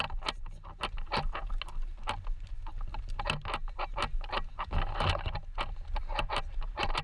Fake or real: real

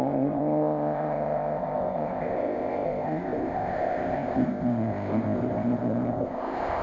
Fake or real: fake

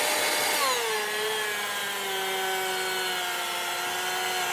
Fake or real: real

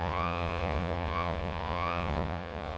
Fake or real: fake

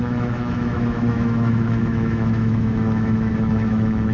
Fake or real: fake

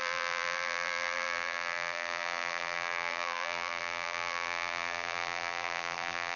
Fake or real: fake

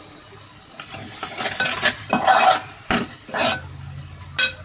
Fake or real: real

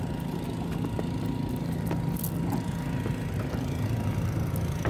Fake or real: real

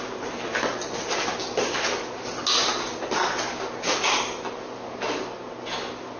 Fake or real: real